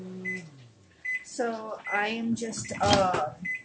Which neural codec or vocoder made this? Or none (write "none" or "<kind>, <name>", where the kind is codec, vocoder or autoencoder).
none